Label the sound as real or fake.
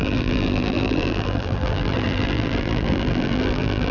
fake